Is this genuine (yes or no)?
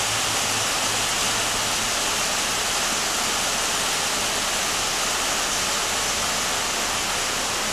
yes